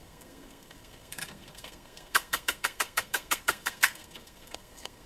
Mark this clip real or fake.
fake